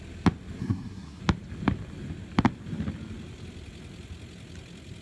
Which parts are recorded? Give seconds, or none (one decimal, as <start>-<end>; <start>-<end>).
0.0-0.6; 1.2-5.0